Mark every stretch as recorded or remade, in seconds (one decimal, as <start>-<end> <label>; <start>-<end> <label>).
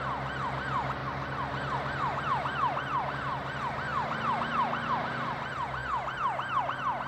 0.0-3.9 recorded; 3.9-4.4 remade; 4.4-7.1 recorded